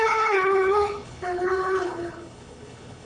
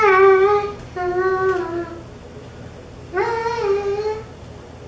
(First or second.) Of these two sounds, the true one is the second